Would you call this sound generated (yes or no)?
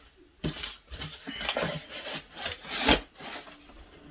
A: no